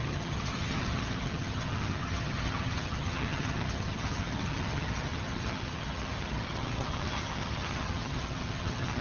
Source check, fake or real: fake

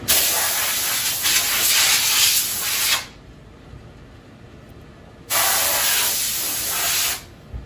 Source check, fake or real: real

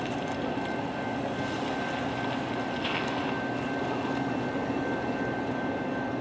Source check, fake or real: real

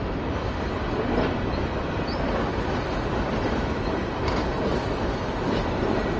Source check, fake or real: real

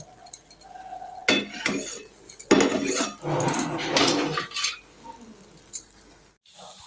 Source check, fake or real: real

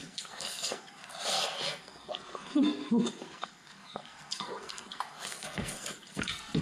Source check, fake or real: fake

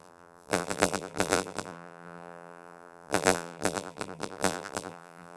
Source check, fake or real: fake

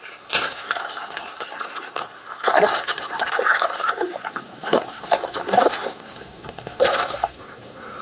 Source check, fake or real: fake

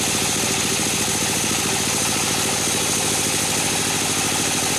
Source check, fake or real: real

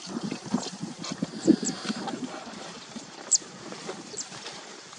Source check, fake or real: fake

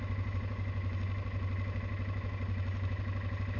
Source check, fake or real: real